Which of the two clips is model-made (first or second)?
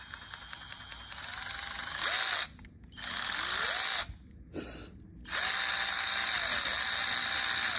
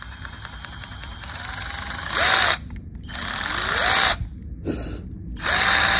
second